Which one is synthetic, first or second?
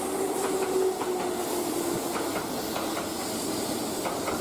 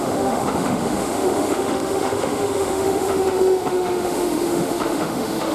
second